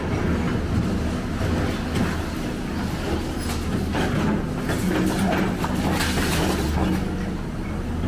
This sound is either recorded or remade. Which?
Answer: recorded